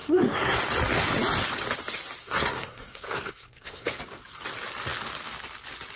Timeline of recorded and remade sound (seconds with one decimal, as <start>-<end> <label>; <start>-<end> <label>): 0.0-0.6 remade; 0.6-2.2 recorded; 2.2-4.0 remade; 4.0-6.0 recorded